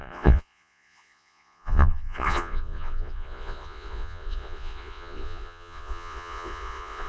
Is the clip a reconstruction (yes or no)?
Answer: yes